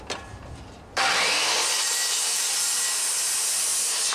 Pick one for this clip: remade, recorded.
recorded